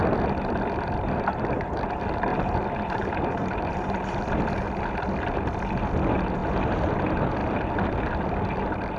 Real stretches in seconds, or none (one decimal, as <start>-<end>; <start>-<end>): 0.0-2.3; 4.2-6.4; 7.0-9.0